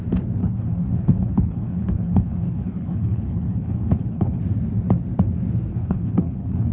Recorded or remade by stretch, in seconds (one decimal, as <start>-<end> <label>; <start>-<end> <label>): 0.0-0.4 recorded; 0.4-4.4 remade; 4.4-5.7 recorded; 5.7-6.7 remade